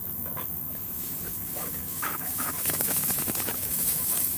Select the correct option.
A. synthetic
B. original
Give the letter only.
A